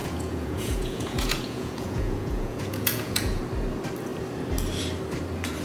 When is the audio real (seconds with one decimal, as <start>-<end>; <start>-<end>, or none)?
3.4-5.6